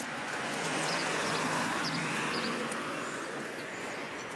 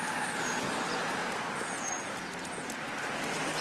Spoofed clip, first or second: first